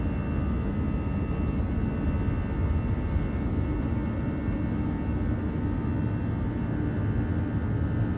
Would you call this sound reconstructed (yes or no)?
no